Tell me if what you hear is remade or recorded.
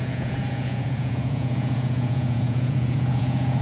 remade